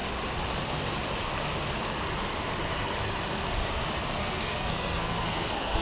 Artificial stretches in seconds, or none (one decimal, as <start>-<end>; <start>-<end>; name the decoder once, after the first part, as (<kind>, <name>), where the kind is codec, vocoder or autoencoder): 4.2-5.8 (codec, SNAC)